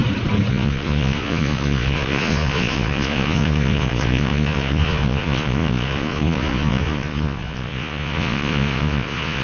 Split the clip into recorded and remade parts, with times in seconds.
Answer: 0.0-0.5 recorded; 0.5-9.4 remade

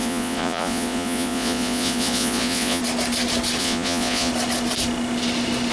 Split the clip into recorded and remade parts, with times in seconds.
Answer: 0.0-2.8 remade; 2.8-3.6 recorded; 3.6-4.3 remade; 4.3-5.7 recorded